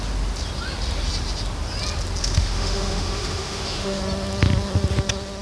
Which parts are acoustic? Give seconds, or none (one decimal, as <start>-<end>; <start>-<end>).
0.0-2.2; 4.0-5.4